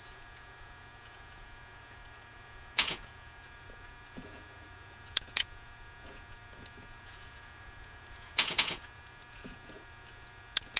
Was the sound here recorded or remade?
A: remade